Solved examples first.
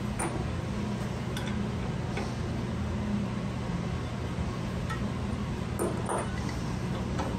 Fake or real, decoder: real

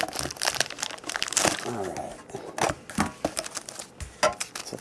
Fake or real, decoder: real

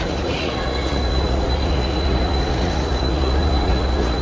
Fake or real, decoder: fake, vocoder, Vocos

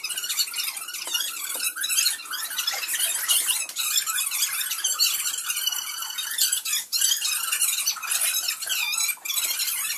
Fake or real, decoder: fake, vocoder, BigVGAN v2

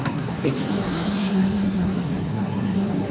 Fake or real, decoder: fake, codec, SNAC